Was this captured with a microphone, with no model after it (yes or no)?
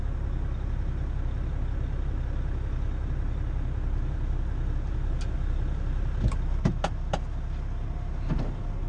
yes